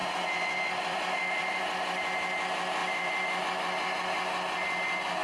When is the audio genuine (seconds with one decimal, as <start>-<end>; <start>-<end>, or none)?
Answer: 1.6-2.8; 3.4-5.2